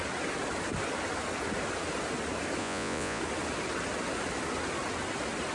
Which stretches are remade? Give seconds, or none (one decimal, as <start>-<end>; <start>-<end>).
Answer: 2.6-3.2